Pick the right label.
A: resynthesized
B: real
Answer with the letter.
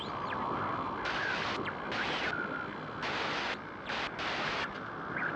B